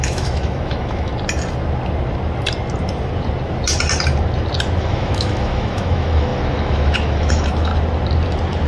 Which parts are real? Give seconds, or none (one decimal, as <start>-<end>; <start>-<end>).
1.1-4.8; 7.7-8.7